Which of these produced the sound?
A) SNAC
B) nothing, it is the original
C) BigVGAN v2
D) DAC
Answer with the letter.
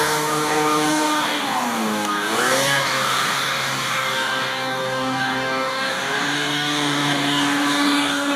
D